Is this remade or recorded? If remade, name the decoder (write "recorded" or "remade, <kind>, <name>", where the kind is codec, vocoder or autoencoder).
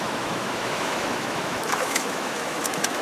remade, autoencoder, DAC-VAE